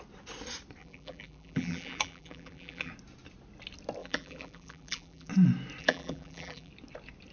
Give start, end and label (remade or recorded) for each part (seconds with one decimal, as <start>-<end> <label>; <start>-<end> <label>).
0.0-0.8 recorded; 0.8-2.9 remade; 2.9-4.0 recorded; 4.0-5.3 remade; 5.3-5.8 recorded; 5.8-6.7 remade; 6.7-7.3 recorded